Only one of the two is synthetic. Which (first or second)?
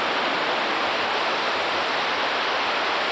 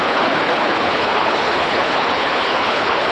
second